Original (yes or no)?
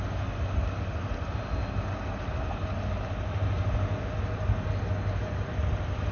yes